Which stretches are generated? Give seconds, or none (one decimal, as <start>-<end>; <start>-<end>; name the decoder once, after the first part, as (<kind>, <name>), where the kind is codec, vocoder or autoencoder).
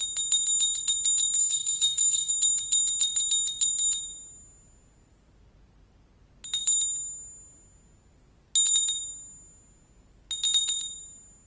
1.4-2.3 (autoencoder, DAC-VAE)